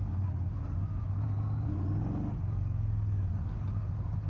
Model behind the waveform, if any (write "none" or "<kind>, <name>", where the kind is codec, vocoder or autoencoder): none